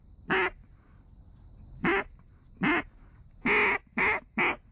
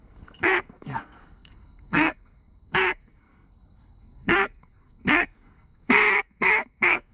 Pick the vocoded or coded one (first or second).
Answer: second